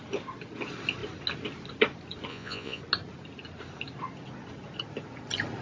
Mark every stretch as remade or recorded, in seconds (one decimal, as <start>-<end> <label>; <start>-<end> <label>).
0.0-2.3 recorded; 2.3-2.8 remade; 2.8-5.6 recorded